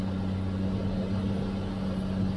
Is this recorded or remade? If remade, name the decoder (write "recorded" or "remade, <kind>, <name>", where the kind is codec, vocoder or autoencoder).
recorded